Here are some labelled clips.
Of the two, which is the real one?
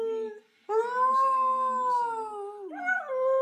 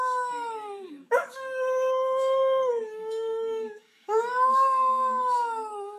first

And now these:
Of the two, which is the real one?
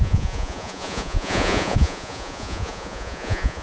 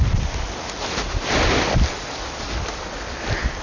second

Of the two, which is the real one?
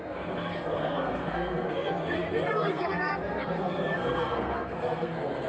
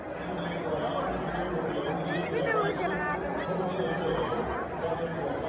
second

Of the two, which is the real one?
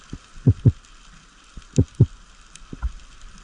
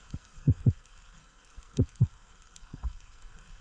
first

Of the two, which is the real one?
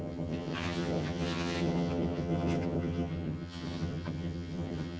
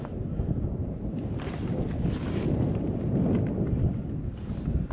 second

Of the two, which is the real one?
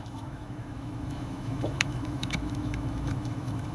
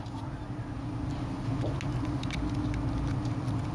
second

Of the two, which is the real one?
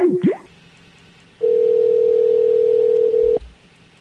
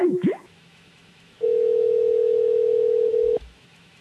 first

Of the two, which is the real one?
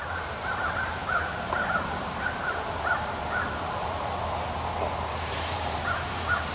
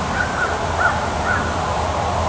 second